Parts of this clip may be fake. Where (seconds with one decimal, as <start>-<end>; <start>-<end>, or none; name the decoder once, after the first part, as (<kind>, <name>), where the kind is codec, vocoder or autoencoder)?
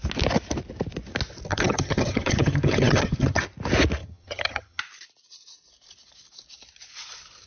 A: 1.5-3.4 (vocoder, HiFi-GAN); 4.0-4.8